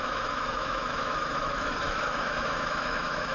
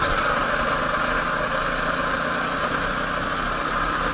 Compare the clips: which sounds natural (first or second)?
second